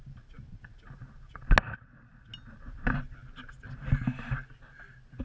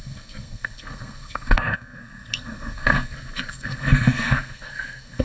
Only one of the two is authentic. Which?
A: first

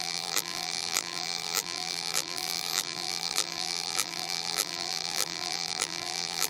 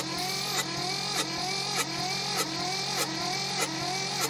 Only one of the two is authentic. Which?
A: second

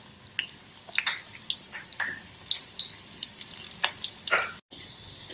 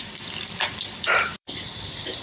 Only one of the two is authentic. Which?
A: first